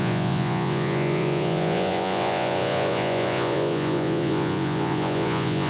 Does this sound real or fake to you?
fake